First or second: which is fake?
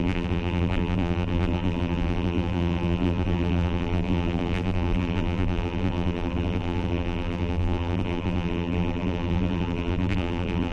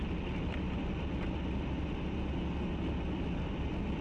first